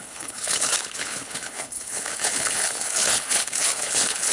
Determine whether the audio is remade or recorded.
remade